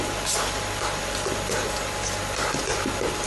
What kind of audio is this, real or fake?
real